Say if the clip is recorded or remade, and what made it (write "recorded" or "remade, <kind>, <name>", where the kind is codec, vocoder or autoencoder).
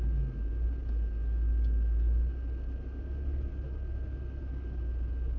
recorded